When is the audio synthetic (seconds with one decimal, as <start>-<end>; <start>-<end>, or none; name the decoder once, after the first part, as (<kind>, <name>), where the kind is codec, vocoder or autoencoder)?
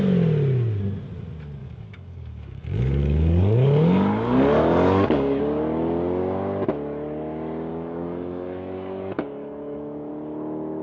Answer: 1.6-5.4 (codec, DAC); 7.7-10.1